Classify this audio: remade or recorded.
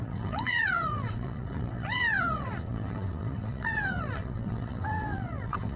remade